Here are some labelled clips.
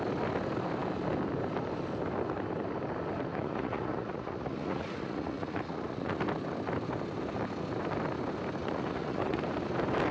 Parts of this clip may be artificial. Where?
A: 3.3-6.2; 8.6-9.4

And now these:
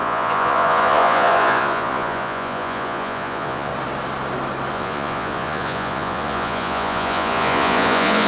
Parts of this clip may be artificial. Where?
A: 0.0-3.7; 4.7-8.3